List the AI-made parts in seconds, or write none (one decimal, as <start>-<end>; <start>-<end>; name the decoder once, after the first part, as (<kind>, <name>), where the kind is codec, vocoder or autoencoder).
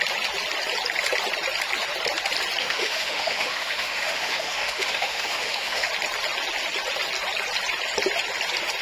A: 2.6-5.9 (autoencoder, DAC-VAE)